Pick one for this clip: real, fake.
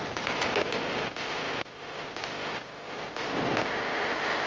real